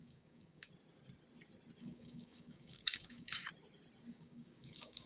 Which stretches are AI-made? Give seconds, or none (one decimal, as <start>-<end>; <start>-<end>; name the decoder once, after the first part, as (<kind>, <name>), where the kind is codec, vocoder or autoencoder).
0.0-0.7 (codec, DAC); 1.8-3.5; 4.1-5.1